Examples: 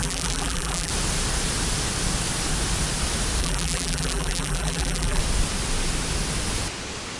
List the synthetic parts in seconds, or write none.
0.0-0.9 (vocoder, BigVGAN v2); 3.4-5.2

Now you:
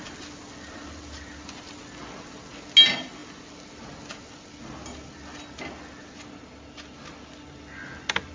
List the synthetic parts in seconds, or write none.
none

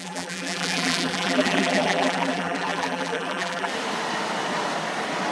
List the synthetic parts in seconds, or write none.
0.0-3.7 (vocoder, BigVGAN v2)

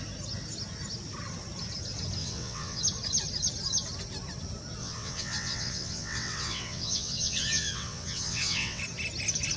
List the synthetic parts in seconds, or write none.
2.2-2.8 (vocoder, WaveNeXt); 4.8-8.8

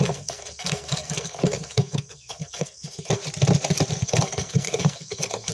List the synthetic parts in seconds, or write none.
0.0-3.2 (codec, SNAC); 4.0-5.5

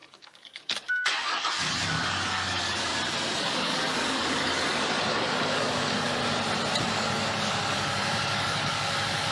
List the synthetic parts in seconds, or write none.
0.0-2.9 (codec, DAC); 3.4-6.2; 6.8-9.3

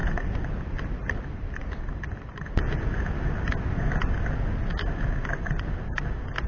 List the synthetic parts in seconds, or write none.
none

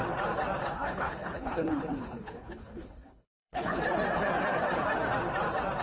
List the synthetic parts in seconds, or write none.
0.6-3.8 (codec, HILCodec)